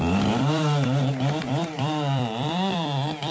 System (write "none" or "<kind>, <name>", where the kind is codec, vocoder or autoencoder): vocoder, BigVGAN v2